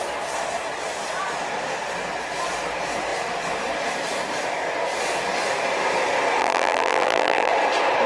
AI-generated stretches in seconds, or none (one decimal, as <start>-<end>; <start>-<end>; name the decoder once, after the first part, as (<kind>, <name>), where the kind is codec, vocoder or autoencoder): 6.4-7.5 (vocoder, BigVGAN v2)